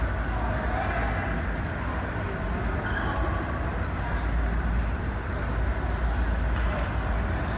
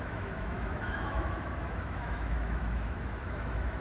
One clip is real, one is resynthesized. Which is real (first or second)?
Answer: first